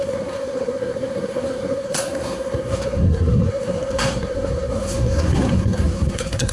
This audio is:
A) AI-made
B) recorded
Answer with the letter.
A